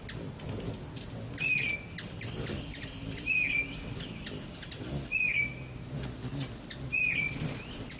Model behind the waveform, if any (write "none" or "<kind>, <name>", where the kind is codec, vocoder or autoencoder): none